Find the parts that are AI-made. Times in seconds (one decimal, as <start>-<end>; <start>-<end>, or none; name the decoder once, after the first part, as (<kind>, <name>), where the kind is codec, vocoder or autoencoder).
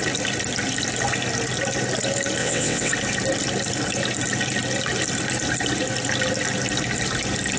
2.4-2.9 (vocoder, WaveNeXt)